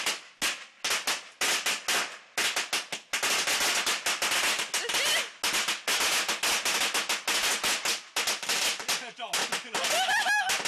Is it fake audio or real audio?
real